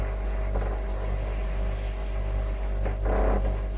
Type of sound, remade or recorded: recorded